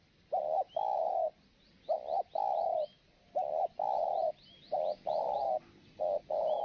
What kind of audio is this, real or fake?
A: real